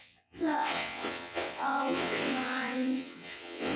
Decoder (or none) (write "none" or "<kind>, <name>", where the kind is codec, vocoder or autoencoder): vocoder, WaveNeXt